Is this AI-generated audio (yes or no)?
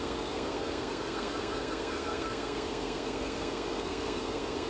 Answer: yes